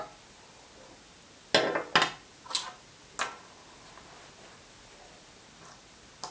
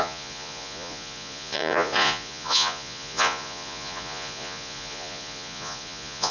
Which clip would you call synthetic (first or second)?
second